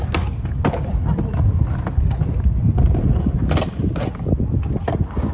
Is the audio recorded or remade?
recorded